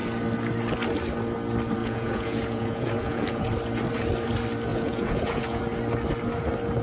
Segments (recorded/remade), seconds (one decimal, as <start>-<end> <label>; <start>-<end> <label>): 0.0-1.8 recorded; 1.8-3.4 remade; 3.4-4.7 recorded; 4.7-5.6 remade; 5.6-6.8 recorded

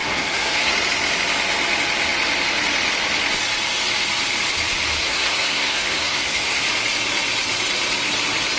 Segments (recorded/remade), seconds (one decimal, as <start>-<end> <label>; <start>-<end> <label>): 0.0-0.7 remade; 0.7-5.0 recorded; 5.0-6.6 remade; 6.6-8.6 recorded

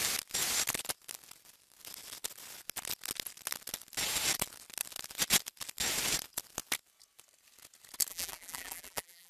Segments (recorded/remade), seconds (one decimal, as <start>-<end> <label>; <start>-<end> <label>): 0.0-8.1 recorded; 8.1-9.3 remade